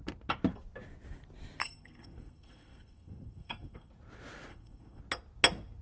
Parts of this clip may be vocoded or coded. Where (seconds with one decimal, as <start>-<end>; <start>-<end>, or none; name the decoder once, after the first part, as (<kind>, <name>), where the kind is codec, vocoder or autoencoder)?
1.6-3.9 (codec, SNAC); 4.5-5.0